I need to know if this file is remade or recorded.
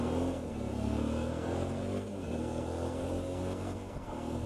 remade